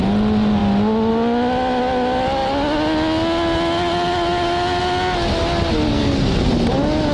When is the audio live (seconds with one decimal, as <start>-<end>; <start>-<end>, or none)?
0.0-5.9; 6.5-7.1